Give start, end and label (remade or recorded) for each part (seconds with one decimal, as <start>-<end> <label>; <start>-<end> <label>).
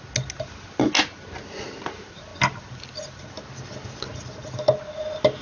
0.0-5.4 recorded